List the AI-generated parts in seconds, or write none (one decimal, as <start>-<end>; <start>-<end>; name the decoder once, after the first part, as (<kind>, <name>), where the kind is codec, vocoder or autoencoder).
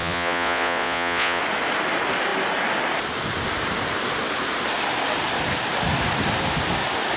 0.0-1.4 (vocoder, Vocos)